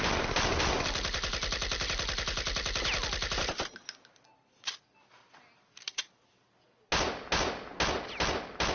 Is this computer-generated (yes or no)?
no